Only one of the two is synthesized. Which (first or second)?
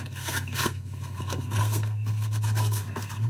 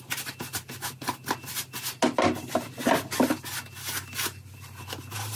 first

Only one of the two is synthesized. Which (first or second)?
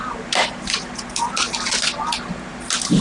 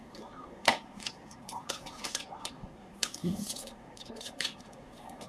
second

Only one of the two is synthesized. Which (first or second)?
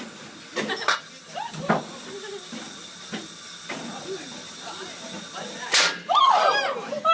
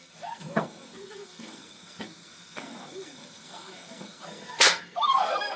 second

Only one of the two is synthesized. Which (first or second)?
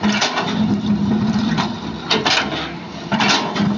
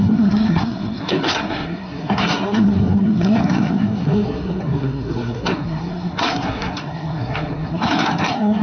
second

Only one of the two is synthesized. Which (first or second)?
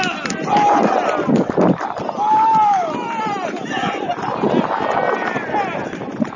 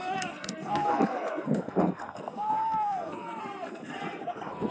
second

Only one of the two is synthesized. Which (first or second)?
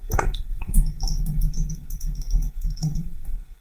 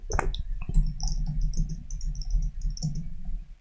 first